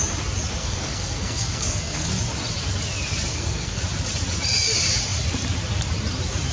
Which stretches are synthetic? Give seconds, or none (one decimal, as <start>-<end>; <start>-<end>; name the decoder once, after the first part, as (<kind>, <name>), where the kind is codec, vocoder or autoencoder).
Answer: 0.6-2.1 (codec, SNAC); 3.3-3.8